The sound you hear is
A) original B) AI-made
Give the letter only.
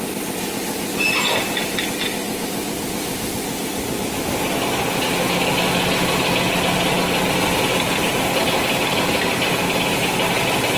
A